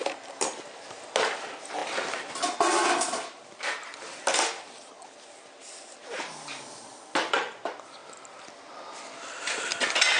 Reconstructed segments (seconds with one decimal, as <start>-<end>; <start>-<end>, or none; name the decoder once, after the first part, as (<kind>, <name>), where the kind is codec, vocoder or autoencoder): none